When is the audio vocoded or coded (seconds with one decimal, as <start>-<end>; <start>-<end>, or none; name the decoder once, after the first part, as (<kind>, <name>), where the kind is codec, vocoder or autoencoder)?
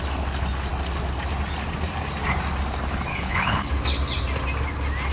3.1-3.7 (codec, HILCodec)